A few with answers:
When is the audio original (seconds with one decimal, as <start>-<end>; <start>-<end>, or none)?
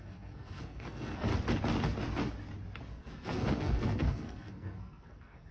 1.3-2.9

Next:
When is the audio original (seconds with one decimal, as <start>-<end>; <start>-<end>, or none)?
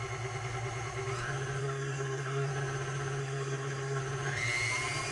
0.0-1.6; 2.5-3.2; 4.0-5.1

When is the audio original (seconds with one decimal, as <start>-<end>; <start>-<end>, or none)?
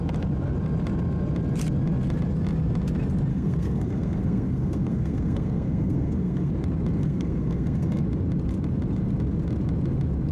0.0-3.3; 6.5-7.0; 8.0-10.3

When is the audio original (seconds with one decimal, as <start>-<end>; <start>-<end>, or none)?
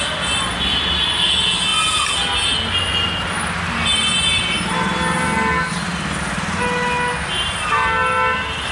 0.0-8.7